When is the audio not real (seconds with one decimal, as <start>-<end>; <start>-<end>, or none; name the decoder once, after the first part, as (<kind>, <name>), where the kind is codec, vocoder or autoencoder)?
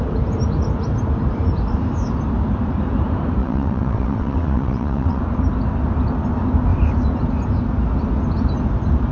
3.4-5.2 (vocoder, WaveNeXt)